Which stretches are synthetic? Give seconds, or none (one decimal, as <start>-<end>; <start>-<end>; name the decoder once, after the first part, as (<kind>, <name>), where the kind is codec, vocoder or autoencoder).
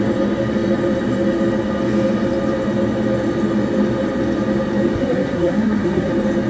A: 5.0-6.1 (codec, SNAC)